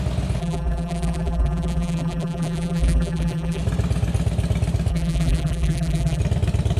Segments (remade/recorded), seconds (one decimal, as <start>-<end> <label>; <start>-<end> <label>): 0.0-0.4 recorded; 0.4-3.6 remade; 3.6-4.9 recorded; 4.9-6.2 remade; 6.2-6.8 recorded